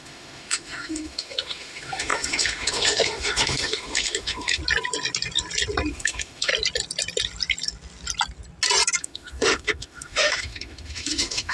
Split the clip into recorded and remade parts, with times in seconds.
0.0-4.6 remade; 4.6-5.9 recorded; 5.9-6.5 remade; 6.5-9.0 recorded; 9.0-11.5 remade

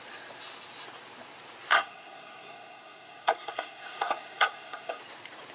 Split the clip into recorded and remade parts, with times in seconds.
0.0-1.7 recorded; 1.7-5.0 remade; 5.0-5.5 recorded

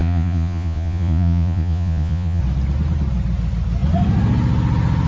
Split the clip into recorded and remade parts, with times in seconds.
0.0-2.4 remade; 2.4-5.1 recorded

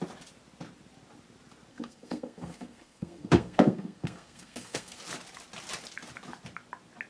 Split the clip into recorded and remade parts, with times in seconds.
0.0-1.7 recorded; 1.7-5.0 remade; 5.0-7.1 recorded

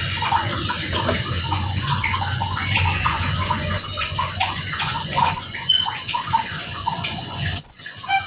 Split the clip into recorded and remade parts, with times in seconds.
0.0-0.5 remade; 0.5-1.5 recorded; 1.5-8.3 remade

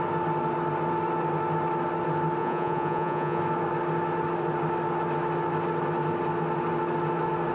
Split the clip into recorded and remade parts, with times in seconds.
0.0-2.4 recorded; 2.4-3.4 remade; 3.4-7.5 recorded

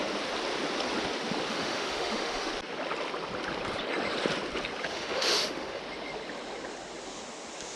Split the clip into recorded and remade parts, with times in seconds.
0.0-1.5 recorded; 1.5-2.5 remade; 2.5-4.9 recorded; 4.9-5.8 remade; 5.8-7.8 recorded

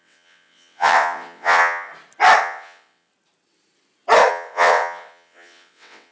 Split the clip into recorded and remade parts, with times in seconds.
0.0-1.9 remade; 1.9-2.4 recorded; 2.4-3.1 remade; 3.1-4.3 recorded; 4.3-6.1 remade